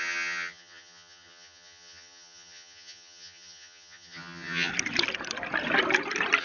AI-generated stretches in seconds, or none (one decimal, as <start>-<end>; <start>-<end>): 0.0-4.7